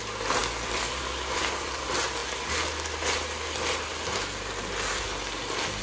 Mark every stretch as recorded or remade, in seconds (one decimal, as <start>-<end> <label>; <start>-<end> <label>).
0.0-2.2 remade; 2.2-5.8 recorded